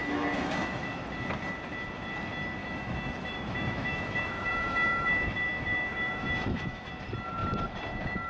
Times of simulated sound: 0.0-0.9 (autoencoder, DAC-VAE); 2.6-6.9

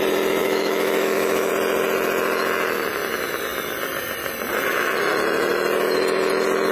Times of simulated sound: 0.4-1.5 (autoencoder, DAC-VAE)

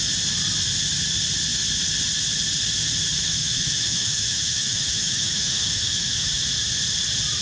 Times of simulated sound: 3.4-6.4 (autoencoder, DAC-VAE)